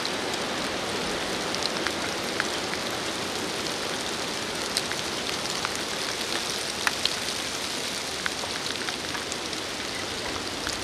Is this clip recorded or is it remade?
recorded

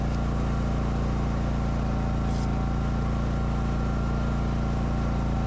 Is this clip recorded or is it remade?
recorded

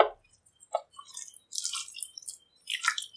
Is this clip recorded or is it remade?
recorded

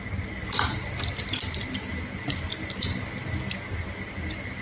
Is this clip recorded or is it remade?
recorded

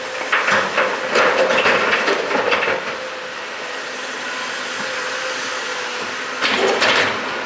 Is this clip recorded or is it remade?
recorded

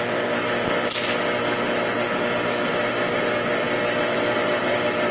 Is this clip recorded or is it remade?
recorded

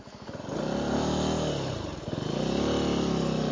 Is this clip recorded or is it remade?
recorded